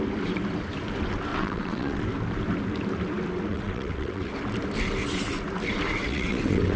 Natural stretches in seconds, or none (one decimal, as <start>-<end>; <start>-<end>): 0.0-1.3; 2.0-3.5; 4.3-6.0